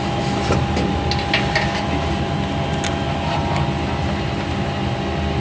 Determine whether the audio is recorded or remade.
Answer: recorded